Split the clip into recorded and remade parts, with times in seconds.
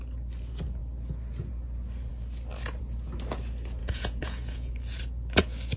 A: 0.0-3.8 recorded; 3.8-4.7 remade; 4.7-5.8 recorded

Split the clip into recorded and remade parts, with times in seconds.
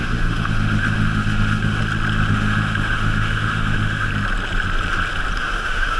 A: 0.0-1.8 remade; 1.8-2.3 recorded; 2.3-4.1 remade; 4.1-5.4 recorded; 5.4-6.0 remade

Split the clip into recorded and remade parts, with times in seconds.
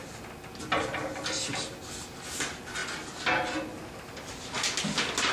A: 0.0-5.3 recorded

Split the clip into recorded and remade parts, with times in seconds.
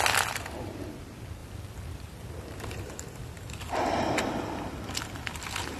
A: 0.0-1.4 recorded; 1.4-2.8 remade; 2.8-5.8 recorded